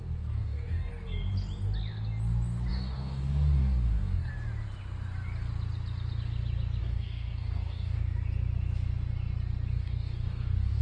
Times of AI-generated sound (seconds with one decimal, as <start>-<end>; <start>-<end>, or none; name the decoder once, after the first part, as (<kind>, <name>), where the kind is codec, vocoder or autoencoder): 0.0-0.9 (codec, DAC); 2.7-4.3; 6.8-8.0; 9.7-10.8